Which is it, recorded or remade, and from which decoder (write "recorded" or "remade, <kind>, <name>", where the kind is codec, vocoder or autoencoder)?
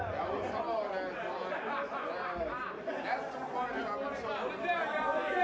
recorded